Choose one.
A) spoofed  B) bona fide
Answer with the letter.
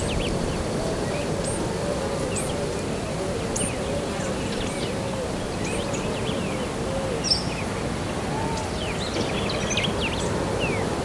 B